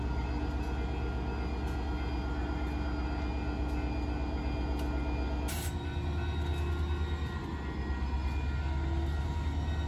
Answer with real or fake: real